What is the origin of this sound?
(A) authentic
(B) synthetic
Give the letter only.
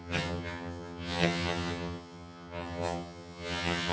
B